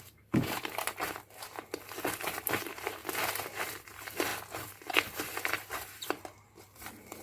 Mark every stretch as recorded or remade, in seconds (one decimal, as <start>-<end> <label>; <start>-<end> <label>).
0.0-1.0 remade; 1.0-2.3 recorded; 2.3-3.0 remade; 3.0-3.8 recorded; 3.8-4.3 remade; 4.3-4.9 recorded; 4.9-7.2 remade